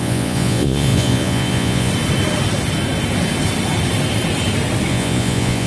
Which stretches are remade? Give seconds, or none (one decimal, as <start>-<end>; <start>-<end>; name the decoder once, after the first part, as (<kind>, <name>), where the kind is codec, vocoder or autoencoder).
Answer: 0.0-1.9 (vocoder, Vocos); 4.9-5.7